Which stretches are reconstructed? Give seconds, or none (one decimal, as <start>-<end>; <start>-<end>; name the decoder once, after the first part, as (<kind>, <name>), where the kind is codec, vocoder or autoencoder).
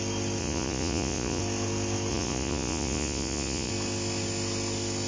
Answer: 0.4-1.4 (vocoder, Vocos); 2.1-3.7